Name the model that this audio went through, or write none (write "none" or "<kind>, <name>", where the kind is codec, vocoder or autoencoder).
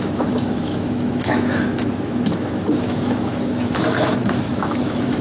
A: autoencoder, DAC-VAE